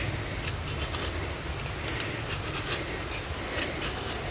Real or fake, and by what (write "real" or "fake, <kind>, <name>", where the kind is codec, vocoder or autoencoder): real